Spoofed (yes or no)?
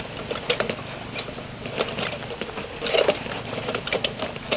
no